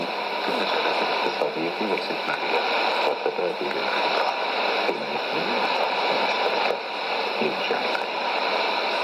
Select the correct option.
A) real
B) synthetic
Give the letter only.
B